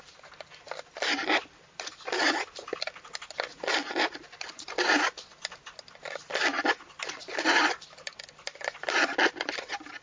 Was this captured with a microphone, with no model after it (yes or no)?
yes